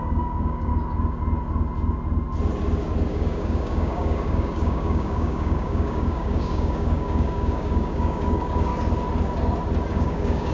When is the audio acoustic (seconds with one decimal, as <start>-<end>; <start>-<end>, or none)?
0.7-3.1; 8.7-9.9